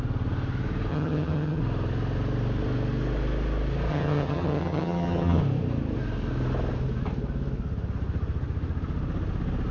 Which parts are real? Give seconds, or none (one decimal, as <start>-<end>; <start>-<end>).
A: 0.0-0.9; 1.6-3.9; 5.4-9.7